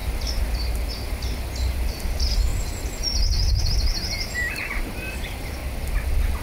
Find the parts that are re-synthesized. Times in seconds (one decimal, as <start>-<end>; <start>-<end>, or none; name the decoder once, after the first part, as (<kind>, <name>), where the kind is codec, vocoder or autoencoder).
0.0-2.5 (vocoder, BigVGAN v2); 3.7-5.6